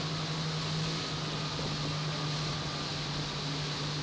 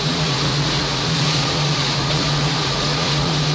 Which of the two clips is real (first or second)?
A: first